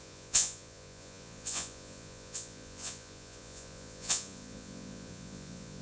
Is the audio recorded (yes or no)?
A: no